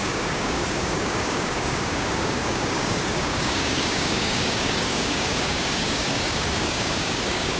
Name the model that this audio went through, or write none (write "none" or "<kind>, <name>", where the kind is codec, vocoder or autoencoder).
codec, DAC